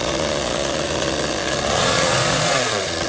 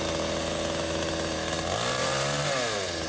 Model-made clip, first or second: first